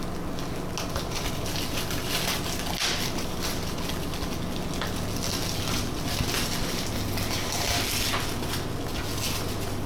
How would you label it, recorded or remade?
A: recorded